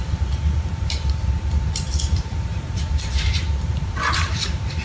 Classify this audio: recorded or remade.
remade